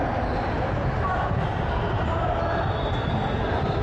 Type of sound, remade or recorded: recorded